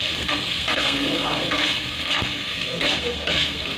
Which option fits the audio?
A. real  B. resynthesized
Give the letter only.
B